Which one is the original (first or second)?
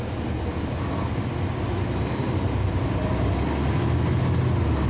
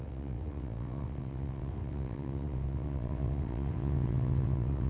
first